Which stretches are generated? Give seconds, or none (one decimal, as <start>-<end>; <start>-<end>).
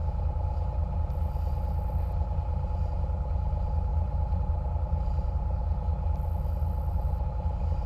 none